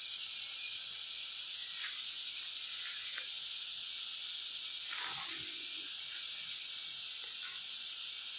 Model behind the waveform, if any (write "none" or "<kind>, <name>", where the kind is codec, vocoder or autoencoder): none